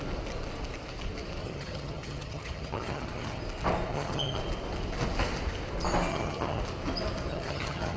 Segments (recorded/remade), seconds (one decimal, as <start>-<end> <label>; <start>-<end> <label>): 0.0-1.4 recorded; 1.4-3.4 remade; 3.4-3.9 recorded; 3.9-4.4 remade; 4.4-6.1 recorded; 6.1-6.6 remade; 6.6-7.3 recorded; 7.3-8.0 remade